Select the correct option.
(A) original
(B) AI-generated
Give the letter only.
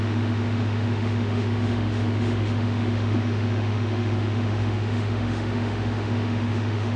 B